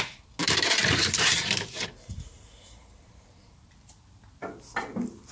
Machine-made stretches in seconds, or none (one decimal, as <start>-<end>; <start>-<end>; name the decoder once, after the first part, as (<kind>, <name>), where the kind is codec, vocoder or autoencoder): 0.4-3.6 (vocoder, BigVGAN v2)